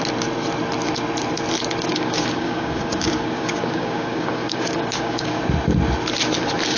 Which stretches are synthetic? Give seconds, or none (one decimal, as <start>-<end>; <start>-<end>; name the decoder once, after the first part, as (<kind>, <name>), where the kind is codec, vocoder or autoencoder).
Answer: 1.9-5.4 (codec, DAC)